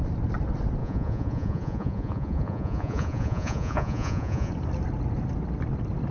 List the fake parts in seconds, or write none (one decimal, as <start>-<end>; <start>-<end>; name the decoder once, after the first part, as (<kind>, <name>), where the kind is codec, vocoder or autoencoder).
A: 0.8-4.5 (vocoder, Vocos)